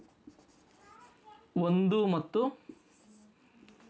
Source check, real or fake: real